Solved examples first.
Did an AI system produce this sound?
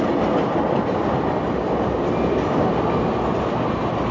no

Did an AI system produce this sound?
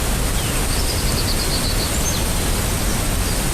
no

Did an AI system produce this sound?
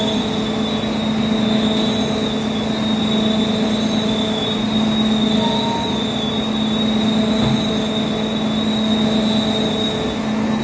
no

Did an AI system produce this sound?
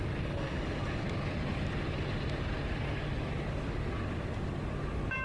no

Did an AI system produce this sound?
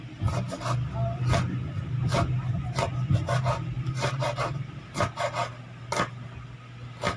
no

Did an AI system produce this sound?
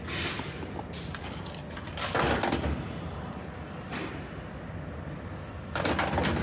no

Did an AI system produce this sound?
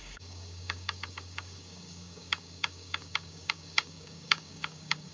yes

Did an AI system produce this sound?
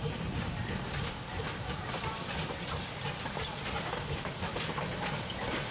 no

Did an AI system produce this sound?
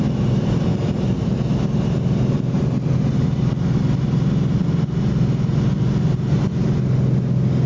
no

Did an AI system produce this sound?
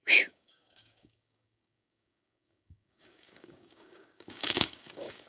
yes